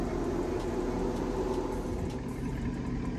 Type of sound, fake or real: real